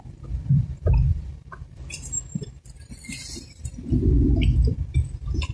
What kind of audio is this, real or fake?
fake